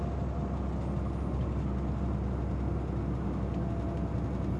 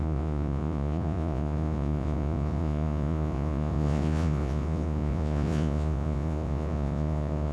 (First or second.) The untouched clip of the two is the first